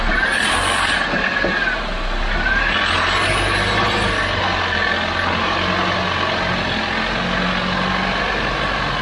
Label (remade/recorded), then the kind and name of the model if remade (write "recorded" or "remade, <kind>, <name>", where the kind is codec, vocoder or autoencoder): recorded